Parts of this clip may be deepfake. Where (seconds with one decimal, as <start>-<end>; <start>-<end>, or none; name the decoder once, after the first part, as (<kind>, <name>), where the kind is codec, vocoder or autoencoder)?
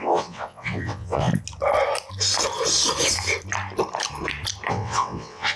0.0-1.3 (vocoder, WaveNeXt); 4.7-5.6